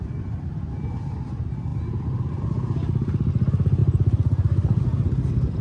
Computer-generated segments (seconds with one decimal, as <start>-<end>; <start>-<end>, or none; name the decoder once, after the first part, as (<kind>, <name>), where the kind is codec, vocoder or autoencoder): none